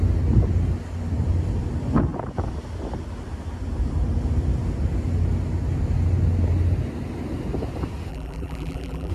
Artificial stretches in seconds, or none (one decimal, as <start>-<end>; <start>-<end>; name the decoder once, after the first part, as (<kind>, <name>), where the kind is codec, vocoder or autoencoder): 8.1-9.1 (vocoder, BigVGAN v2)